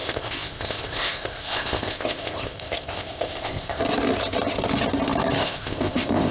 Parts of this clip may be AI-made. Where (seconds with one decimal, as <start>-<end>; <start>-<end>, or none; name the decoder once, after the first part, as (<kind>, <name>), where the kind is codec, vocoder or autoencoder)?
0.0-3.8 (codec, ZipCodec); 5.4-6.3